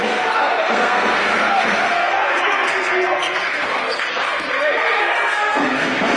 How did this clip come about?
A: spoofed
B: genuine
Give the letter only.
A